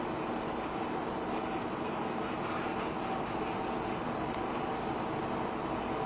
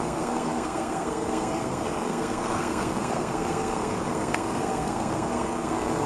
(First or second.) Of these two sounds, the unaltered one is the first